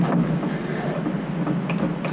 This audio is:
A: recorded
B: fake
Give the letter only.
A